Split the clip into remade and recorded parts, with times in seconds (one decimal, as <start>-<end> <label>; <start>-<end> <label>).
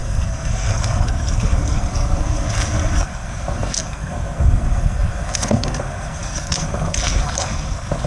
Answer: 0.0-8.1 remade